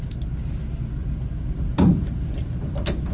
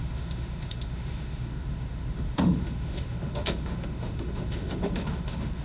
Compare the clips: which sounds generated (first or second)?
second